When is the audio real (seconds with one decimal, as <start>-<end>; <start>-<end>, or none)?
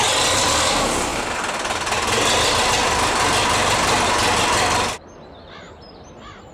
0.0-6.5